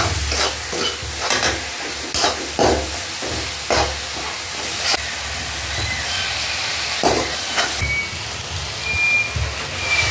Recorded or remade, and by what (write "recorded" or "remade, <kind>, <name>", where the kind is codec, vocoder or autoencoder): recorded